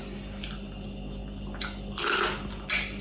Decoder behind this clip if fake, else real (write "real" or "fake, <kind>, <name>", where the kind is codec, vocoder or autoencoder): real